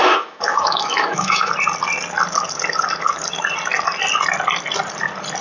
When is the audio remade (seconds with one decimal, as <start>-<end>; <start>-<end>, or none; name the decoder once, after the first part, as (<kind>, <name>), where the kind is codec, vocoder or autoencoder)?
0.0-1.5 (autoencoder, DAC-VAE)